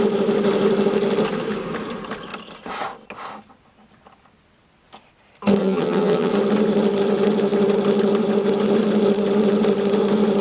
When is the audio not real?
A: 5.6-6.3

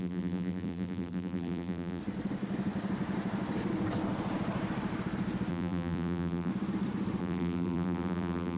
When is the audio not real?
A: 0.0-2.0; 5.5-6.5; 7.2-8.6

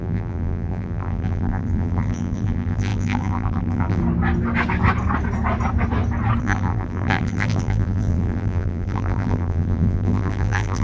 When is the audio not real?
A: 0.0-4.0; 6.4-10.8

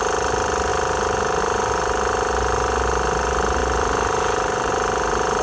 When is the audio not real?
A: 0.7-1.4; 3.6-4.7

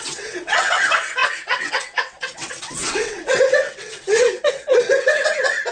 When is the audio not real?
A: 0.0-5.7